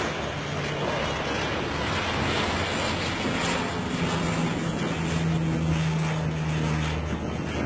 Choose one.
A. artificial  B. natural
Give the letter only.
B